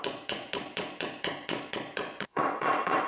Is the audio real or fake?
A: fake